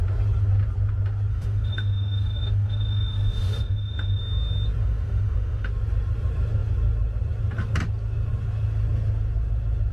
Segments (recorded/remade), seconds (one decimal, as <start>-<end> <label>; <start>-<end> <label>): 0.0-1.3 recorded; 1.3-4.2 remade; 4.2-4.8 recorded; 4.8-5.7 remade; 5.7-9.9 recorded